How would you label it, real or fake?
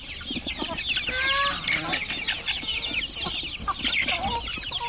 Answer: real